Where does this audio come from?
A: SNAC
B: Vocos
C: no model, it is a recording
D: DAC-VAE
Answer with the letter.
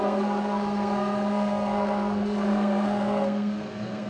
A